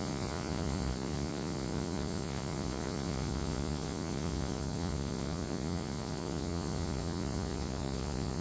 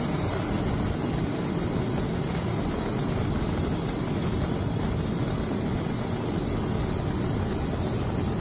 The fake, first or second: first